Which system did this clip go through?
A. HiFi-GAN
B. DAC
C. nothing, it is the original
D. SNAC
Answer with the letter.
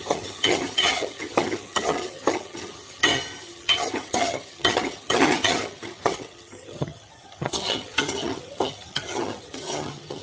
A